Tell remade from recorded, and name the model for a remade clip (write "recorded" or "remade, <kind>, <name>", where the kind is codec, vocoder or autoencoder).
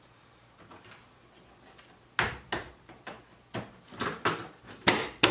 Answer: recorded